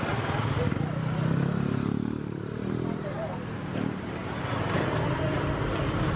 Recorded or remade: recorded